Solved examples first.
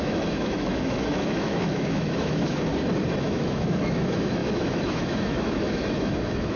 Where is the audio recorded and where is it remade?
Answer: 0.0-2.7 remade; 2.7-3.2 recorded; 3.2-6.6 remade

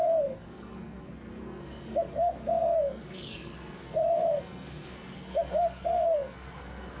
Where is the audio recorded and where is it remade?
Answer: 0.0-7.0 remade

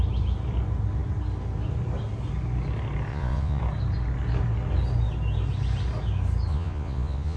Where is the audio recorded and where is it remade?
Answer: 0.0-3.1 recorded; 3.1-3.6 remade; 3.6-6.5 recorded; 6.5-7.4 remade

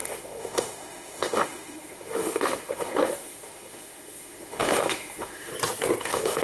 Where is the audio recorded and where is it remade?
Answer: 0.0-5.5 remade; 5.5-6.0 recorded; 6.0-6.4 remade

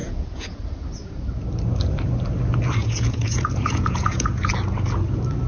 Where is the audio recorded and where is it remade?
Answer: 0.0-0.6 remade; 0.6-2.8 recorded; 2.8-4.5 remade; 4.5-5.5 recorded